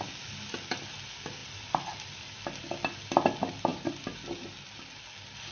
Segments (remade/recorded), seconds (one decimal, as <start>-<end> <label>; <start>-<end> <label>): 0.0-5.5 recorded